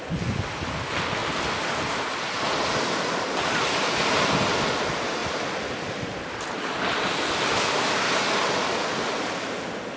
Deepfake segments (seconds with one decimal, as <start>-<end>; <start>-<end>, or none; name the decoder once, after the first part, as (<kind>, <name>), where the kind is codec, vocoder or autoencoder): none